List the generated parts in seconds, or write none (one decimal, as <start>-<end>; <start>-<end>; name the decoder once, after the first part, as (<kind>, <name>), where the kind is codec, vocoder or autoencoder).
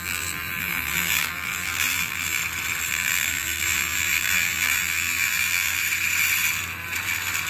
0.0-2.4 (vocoder, BigVGAN v2); 2.9-5.8